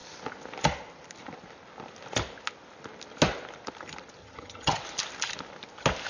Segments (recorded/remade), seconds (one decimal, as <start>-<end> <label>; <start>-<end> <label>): 0.0-4.2 recorded; 4.2-4.8 remade; 4.8-6.1 recorded